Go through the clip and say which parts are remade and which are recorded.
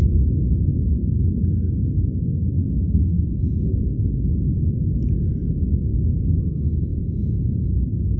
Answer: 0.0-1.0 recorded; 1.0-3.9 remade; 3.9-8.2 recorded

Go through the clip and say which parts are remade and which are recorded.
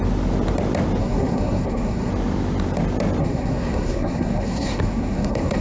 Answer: 0.0-1.0 recorded; 1.0-2.1 remade; 2.1-3.2 recorded; 3.2-5.6 remade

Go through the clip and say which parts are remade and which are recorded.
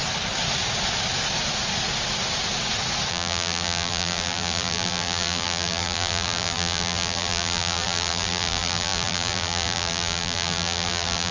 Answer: 0.0-3.1 recorded; 3.1-11.3 remade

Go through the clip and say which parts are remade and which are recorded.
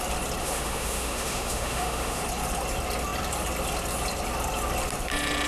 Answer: 0.0-0.4 recorded; 0.4-2.2 remade; 2.2-5.5 recorded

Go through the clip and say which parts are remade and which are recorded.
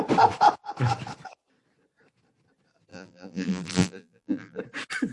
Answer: 0.0-2.9 recorded; 2.9-4.6 remade; 4.6-5.1 recorded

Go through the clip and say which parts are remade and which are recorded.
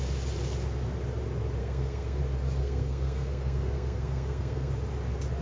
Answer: 0.0-1.6 recorded; 1.6-2.2 remade; 2.2-2.6 recorded; 2.6-4.7 remade; 4.7-5.4 recorded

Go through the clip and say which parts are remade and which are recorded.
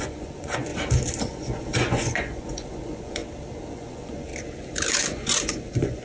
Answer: 0.0-0.7 remade; 0.7-1.2 recorded; 1.2-3.2 remade; 3.2-3.7 recorded; 3.7-4.3 remade; 4.3-4.9 recorded; 4.9-6.0 remade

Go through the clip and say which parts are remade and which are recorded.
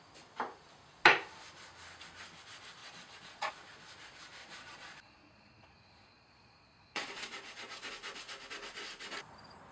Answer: 0.0-2.8 recorded; 2.8-3.5 remade; 3.5-4.4 recorded; 4.4-7.9 remade; 7.9-9.7 recorded